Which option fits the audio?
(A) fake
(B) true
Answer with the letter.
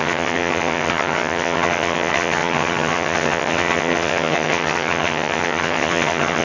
A